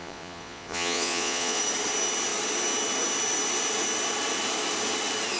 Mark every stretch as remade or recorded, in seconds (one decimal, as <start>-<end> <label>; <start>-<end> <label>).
0.0-1.6 remade; 1.6-5.4 recorded